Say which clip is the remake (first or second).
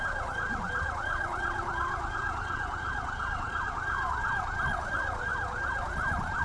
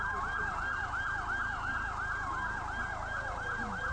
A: first